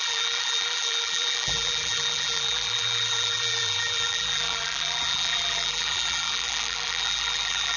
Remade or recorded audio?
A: remade